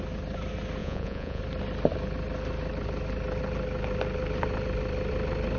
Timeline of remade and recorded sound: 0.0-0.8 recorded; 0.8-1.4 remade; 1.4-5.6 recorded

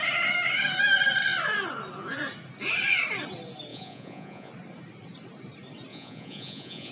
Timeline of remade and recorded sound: 0.0-3.7 recorded; 3.7-4.5 remade; 4.5-5.9 recorded; 5.9-6.9 remade

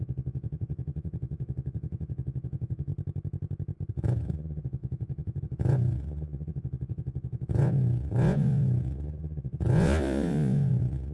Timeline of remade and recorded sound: 0.0-2.9 remade; 2.9-3.9 recorded; 3.9-11.1 remade